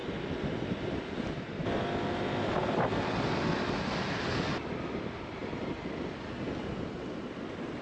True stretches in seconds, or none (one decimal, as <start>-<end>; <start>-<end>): 0.0-7.8